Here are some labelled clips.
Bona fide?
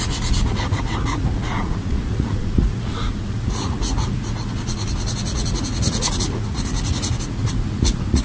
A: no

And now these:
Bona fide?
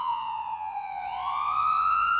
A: no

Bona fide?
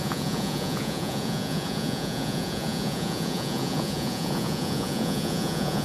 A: no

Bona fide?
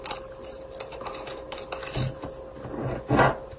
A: yes